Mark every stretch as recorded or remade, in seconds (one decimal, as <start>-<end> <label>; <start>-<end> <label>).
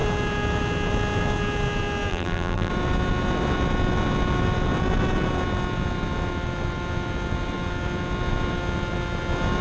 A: 0.0-2.1 recorded; 2.1-2.7 remade; 2.7-9.6 recorded